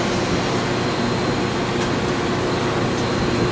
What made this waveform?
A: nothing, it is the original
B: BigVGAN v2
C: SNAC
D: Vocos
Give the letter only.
A